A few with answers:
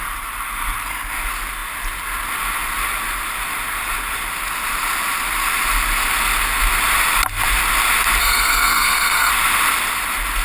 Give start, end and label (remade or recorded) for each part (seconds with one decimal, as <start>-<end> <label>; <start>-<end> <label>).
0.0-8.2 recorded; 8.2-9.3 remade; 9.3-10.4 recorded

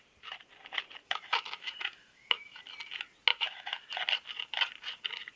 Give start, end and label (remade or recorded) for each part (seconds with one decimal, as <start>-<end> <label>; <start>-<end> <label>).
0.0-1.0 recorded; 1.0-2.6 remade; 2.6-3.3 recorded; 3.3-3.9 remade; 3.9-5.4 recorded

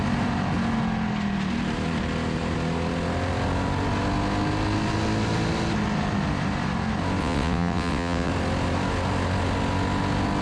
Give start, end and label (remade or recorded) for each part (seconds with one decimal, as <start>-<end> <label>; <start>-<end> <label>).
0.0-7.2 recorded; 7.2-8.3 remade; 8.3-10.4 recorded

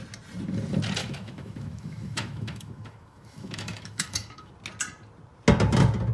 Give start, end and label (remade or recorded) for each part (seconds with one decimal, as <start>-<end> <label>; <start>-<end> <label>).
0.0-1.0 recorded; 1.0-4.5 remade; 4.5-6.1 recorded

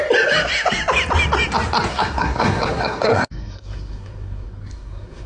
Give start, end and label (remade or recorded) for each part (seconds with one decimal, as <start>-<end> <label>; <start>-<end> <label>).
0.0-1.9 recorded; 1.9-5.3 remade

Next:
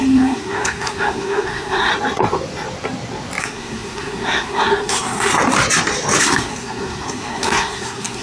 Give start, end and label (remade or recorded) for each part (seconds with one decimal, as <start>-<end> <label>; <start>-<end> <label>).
0.0-1.9 remade; 1.9-3.4 recorded; 3.4-5.3 remade; 5.3-6.2 recorded; 6.2-8.2 remade